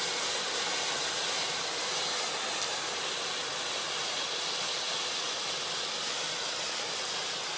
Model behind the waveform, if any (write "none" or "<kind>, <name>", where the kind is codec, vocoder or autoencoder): none